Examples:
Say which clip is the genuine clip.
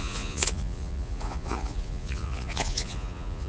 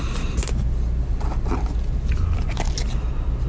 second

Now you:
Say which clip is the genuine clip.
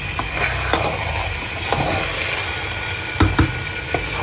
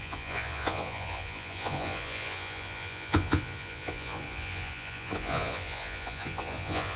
first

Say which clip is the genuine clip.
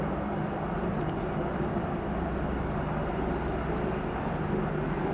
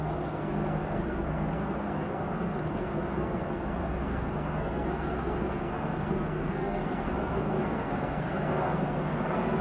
first